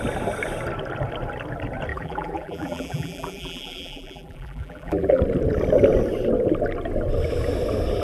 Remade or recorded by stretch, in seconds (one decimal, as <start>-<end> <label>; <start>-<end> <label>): 0.0-1.9 recorded; 1.9-5.2 remade; 5.2-8.0 recorded